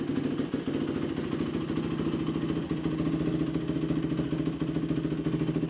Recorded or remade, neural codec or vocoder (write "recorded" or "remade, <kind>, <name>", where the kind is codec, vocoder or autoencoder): recorded